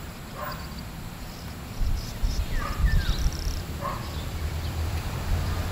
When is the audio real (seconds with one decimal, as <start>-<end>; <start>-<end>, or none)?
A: 0.4-3.6